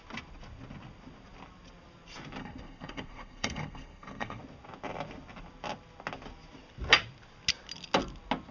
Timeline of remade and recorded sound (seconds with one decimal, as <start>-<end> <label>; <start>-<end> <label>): 0.0-2.4 recorded; 2.4-4.4 remade; 4.4-8.5 recorded